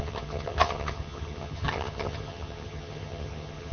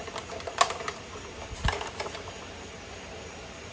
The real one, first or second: second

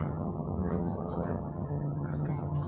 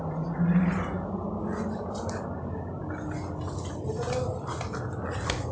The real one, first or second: second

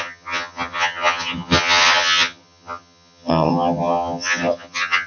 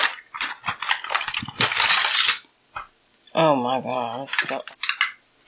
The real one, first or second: second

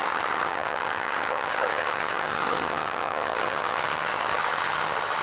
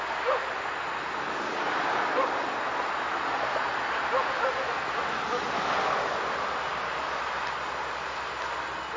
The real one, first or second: second